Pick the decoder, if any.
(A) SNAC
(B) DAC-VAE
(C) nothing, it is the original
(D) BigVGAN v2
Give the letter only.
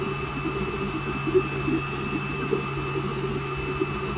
C